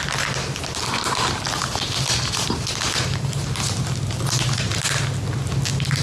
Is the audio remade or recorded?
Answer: recorded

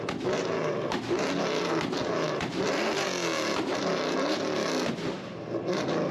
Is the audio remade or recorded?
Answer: recorded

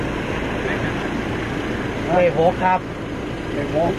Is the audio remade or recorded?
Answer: recorded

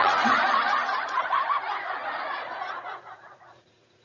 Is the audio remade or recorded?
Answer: remade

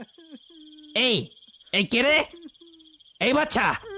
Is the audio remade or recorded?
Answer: recorded